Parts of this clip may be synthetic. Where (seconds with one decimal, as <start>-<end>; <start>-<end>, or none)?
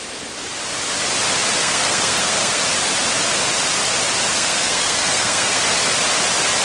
1.6-2.6; 4.3-5.6